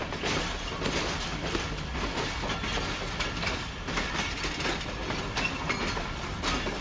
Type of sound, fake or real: real